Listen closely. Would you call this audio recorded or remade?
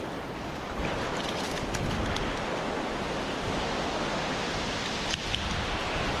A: recorded